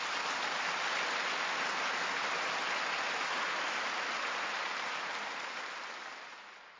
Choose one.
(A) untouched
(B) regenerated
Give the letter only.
A